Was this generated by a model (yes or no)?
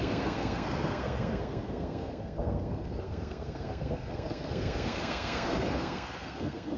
yes